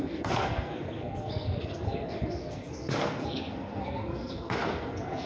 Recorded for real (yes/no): no